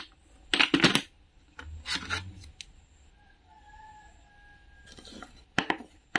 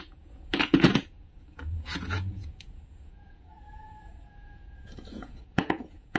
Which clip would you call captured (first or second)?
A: first